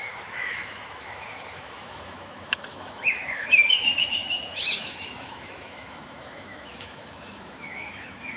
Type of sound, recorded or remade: remade